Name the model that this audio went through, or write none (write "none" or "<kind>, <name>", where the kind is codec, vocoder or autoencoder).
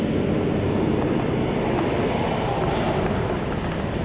none